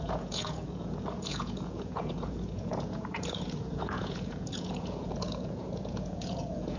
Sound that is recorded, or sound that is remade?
remade